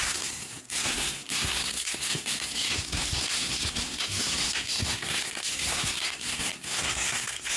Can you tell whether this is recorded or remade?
remade